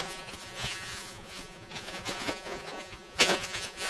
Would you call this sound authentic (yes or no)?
no